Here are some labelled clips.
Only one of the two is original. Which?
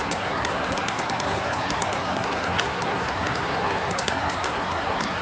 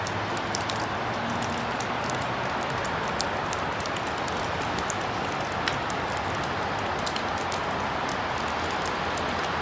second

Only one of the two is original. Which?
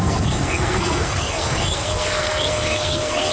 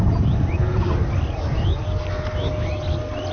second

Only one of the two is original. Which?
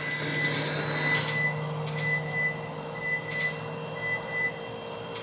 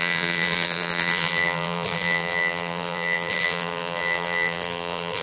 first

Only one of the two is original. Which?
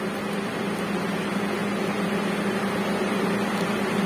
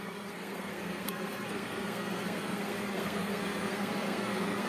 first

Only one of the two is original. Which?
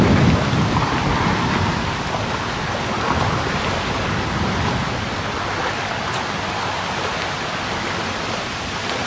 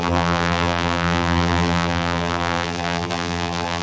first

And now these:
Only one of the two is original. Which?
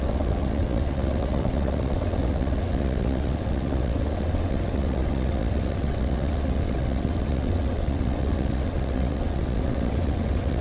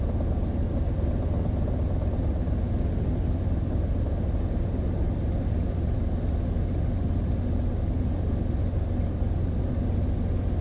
second